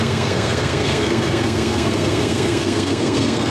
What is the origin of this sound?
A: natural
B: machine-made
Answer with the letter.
B